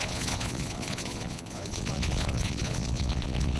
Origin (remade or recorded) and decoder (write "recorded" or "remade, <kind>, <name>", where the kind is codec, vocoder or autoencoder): remade, vocoder, Vocos